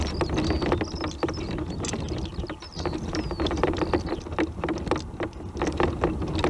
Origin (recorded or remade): recorded